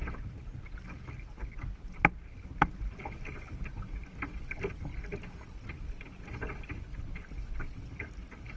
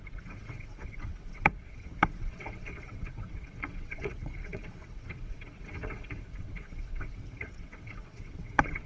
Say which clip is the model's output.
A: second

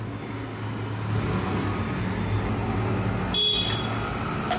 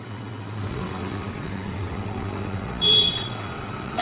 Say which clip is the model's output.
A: second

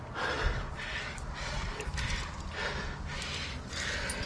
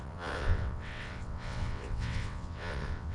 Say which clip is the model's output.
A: second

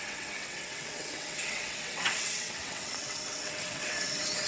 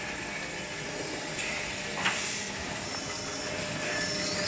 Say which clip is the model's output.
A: first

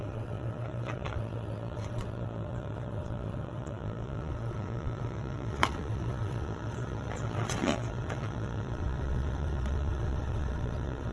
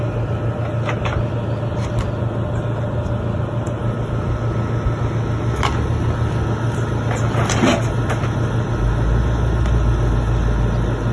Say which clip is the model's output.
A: first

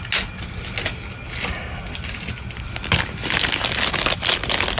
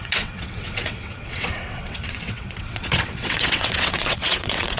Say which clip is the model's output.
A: second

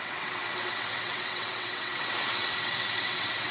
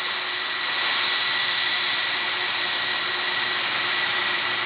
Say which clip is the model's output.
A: first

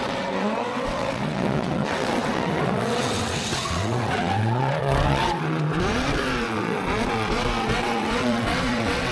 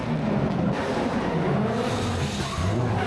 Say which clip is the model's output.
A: first